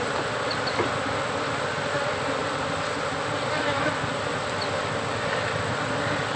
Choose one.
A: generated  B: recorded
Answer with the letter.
B